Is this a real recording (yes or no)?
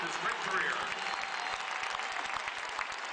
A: yes